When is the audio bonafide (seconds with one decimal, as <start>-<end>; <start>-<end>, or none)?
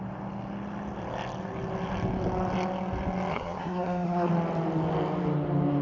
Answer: 0.0-3.3; 4.3-5.8